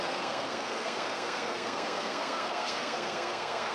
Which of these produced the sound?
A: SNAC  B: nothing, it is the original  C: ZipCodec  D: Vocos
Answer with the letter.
A